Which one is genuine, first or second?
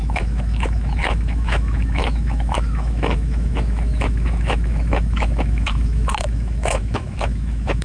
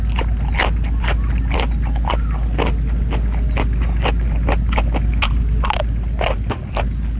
second